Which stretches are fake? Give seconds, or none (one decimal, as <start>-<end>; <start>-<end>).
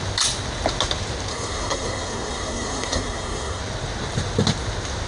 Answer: 1.3-3.6